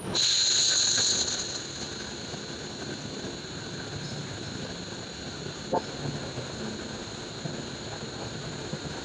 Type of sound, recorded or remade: recorded